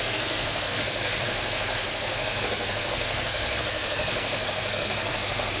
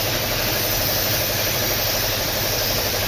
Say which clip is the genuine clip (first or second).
second